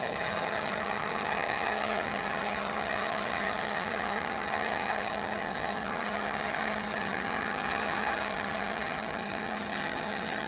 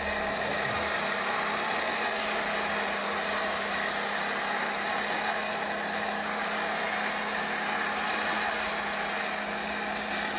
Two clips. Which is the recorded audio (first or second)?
second